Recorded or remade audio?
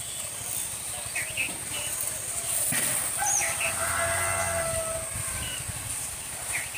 recorded